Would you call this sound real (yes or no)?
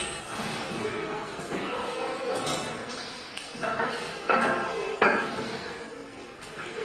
no